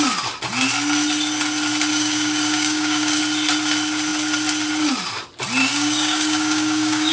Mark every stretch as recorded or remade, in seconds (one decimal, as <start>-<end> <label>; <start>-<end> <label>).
0.0-1.9 recorded; 1.9-3.2 remade; 3.2-5.6 recorded; 5.6-7.1 remade